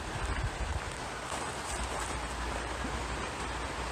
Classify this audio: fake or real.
real